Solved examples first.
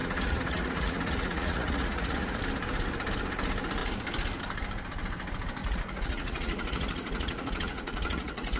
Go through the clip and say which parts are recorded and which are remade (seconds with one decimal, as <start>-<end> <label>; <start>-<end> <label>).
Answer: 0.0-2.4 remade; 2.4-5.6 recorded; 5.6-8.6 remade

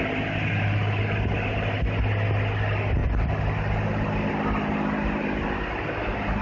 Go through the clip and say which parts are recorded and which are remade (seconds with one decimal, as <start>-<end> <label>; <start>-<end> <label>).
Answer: 0.0-6.4 recorded

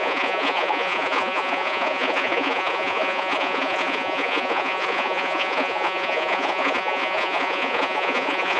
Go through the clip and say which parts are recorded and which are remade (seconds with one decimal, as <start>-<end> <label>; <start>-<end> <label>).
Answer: 0.0-8.6 remade

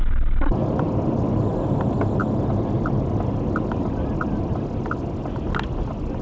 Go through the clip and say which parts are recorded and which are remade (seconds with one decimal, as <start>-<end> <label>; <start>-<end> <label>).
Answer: 0.0-6.2 recorded

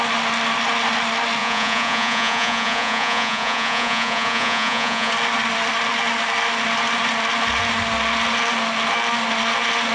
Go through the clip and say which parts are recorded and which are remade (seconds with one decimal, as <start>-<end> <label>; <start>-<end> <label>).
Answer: 0.0-1.4 recorded; 1.4-5.1 remade; 5.1-9.9 recorded

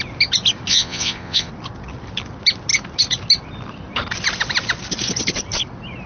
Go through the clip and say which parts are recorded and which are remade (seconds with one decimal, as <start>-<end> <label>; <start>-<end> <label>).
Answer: 0.0-0.7 recorded; 0.7-1.5 remade; 1.5-6.1 recorded

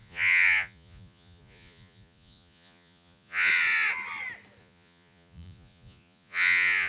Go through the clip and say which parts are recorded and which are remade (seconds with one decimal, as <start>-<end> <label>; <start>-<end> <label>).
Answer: 0.0-3.5 remade; 3.5-4.6 recorded; 4.6-6.9 remade

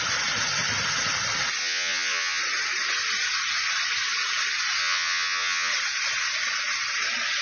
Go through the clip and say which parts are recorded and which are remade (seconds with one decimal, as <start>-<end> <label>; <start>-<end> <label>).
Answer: 0.0-1.6 recorded; 1.6-2.4 remade; 2.4-4.8 recorded; 4.8-5.7 remade; 5.7-7.4 recorded